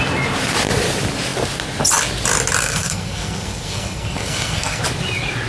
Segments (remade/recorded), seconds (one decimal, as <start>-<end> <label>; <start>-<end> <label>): 0.0-2.6 recorded; 2.6-4.8 remade; 4.8-5.5 recorded